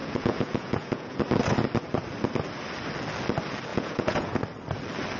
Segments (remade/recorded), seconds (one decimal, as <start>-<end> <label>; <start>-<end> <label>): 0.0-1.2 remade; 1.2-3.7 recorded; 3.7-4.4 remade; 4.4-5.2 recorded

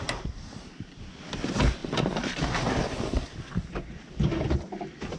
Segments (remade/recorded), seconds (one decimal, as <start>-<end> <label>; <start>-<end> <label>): 0.0-1.8 recorded; 1.8-5.2 remade

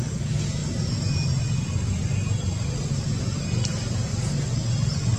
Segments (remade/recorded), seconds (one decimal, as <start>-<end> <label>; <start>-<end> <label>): 0.0-0.6 recorded; 0.6-2.9 remade; 2.9-5.2 recorded

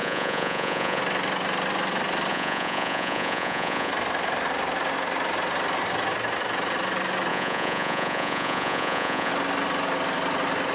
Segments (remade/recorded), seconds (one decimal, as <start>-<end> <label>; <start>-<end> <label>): 0.0-1.0 remade; 1.0-2.3 recorded; 2.3-3.9 remade; 3.9-7.3 recorded; 7.3-9.3 remade; 9.3-10.7 recorded

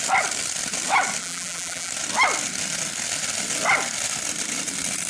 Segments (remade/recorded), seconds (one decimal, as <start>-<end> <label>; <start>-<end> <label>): 0.0-1.2 recorded; 1.2-1.9 remade; 1.9-5.1 recorded

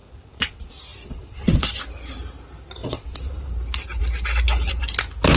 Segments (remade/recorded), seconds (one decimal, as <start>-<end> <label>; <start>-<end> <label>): 0.0-0.6 remade; 0.6-1.0 recorded; 1.0-1.8 remade; 1.8-2.8 recorded; 2.8-3.5 remade; 3.5-5.4 recorded